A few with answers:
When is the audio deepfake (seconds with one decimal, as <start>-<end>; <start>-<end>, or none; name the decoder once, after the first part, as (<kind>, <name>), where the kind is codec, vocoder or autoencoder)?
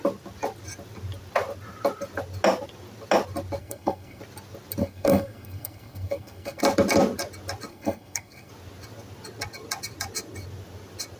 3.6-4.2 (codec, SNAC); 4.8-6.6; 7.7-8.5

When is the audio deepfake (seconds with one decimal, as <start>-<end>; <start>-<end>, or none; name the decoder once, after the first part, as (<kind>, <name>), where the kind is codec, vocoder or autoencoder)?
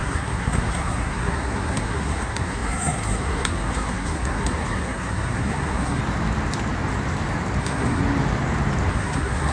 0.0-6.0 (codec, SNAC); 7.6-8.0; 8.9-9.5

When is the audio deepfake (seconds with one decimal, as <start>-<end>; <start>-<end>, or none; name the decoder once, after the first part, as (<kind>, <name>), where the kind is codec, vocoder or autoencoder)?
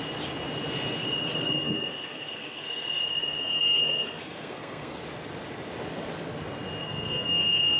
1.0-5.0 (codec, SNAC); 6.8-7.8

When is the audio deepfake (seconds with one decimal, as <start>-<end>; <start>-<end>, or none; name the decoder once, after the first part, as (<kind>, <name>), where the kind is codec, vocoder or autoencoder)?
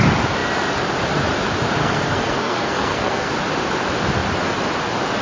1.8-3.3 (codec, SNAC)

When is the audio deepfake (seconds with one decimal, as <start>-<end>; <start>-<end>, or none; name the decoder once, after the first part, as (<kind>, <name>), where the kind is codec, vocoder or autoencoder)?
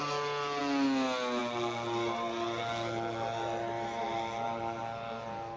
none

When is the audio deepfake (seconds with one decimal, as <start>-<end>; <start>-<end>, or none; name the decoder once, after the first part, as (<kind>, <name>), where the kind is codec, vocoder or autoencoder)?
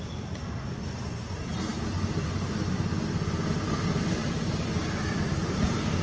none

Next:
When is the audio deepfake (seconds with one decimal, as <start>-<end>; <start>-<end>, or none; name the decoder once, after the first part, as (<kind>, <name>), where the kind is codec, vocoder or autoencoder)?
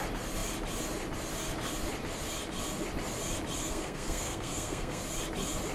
3.6-5.0 (codec, SNAC)